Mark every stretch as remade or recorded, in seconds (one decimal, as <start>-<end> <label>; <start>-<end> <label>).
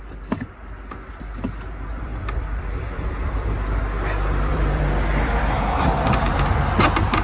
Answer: 0.0-7.2 remade